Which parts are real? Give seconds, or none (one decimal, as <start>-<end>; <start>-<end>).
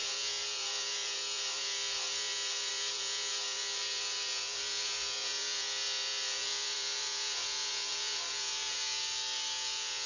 none